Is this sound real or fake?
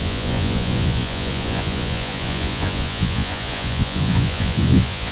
fake